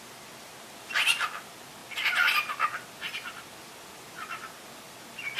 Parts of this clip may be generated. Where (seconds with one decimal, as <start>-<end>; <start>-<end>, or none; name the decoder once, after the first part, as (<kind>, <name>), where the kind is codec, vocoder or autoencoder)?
none